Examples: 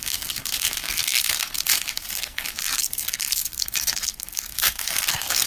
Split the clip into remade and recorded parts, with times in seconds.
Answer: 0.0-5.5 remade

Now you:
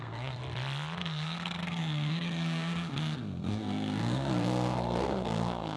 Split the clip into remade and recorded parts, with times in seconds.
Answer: 0.0-0.4 remade; 0.4-1.0 recorded; 1.0-5.8 remade

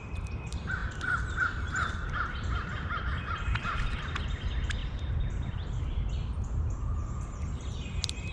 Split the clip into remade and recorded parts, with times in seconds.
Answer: 0.0-8.3 recorded